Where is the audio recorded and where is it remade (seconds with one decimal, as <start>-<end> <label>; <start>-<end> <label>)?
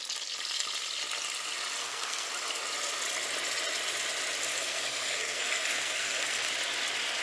0.0-1.8 recorded; 1.8-2.3 remade; 2.3-4.5 recorded; 4.5-6.5 remade; 6.5-7.2 recorded